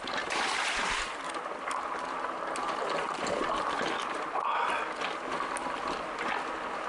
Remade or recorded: recorded